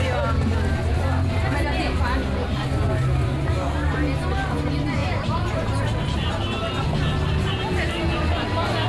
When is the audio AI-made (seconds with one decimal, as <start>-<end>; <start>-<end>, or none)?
5.0-5.8

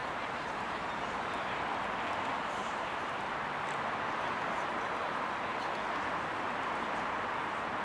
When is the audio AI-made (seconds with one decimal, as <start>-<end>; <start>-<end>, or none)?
0.0-1.3; 2.6-3.3

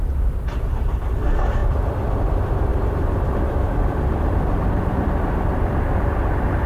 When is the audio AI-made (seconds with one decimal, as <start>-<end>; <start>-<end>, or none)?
0.0-1.6; 2.3-6.7

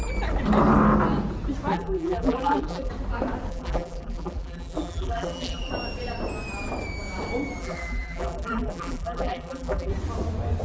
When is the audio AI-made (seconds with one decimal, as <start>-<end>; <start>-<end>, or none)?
1.7-2.9; 3.5-5.7; 7.6-9.9